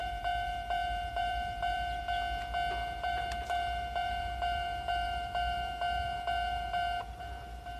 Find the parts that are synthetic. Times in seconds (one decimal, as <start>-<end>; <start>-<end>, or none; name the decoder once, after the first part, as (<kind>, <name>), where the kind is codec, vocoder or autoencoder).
0.0-2.0 (vocoder, BigVGAN v2); 2.8-7.8